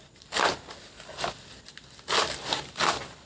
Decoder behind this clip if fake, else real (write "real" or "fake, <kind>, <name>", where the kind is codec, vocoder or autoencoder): real